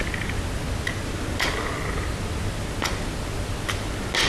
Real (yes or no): yes